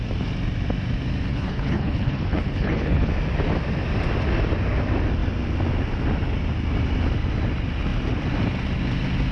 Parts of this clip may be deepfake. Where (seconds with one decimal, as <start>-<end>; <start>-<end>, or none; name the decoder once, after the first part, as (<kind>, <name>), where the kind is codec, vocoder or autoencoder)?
1.3-3.1 (codec, HILCodec)